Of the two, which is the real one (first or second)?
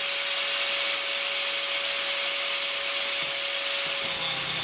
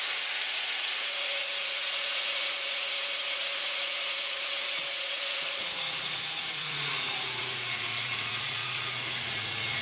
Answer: first